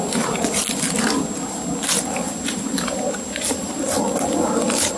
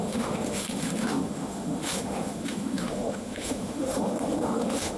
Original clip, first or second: first